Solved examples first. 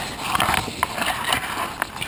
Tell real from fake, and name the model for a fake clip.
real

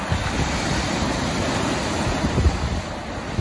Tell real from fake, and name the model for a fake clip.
real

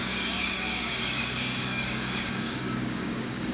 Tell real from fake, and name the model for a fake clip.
fake, codec, DAC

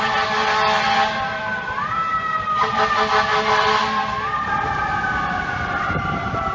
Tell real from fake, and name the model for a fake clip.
fake, vocoder, BigVGAN v2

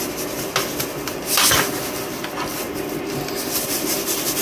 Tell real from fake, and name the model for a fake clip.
real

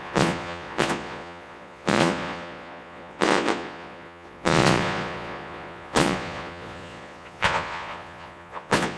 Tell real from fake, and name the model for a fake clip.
fake, vocoder, Vocos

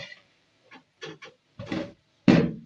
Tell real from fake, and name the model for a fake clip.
fake, vocoder, BigVGAN v2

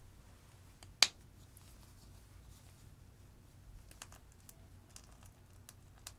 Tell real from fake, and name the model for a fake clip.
real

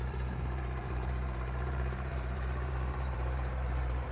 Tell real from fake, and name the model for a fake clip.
fake, vocoder, BigVGAN v2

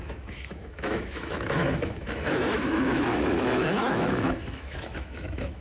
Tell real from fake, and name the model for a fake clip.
fake, autoencoder, DAC-VAE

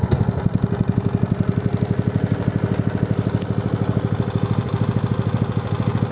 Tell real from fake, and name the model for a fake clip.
real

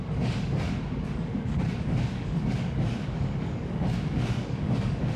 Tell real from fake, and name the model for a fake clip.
fake, codec, DAC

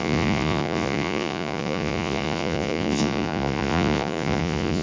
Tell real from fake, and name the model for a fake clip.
fake, vocoder, Vocos